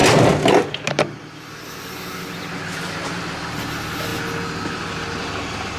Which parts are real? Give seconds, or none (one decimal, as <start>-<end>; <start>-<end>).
0.0-5.8